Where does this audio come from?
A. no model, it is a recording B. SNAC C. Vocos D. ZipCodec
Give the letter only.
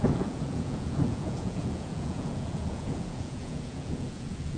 C